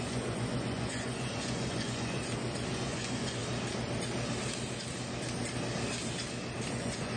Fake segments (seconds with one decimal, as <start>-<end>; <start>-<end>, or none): 0.0-2.2; 2.7-3.4; 6.7-7.2